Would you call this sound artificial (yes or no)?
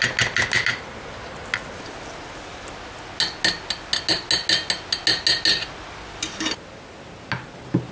no